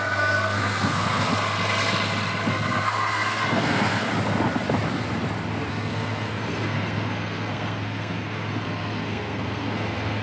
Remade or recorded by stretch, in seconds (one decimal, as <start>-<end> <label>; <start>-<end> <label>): 0.0-1.3 remade; 1.3-2.5 recorded; 2.5-4.1 remade; 4.1-5.7 recorded; 5.7-10.2 remade